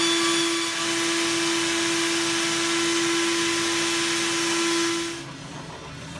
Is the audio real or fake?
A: real